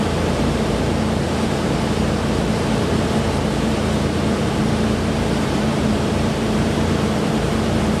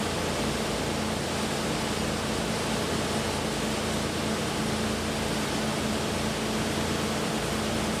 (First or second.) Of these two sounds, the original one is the second